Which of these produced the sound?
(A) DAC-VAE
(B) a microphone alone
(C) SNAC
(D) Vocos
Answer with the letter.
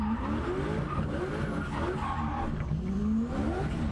B